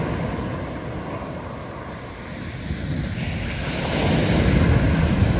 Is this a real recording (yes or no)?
yes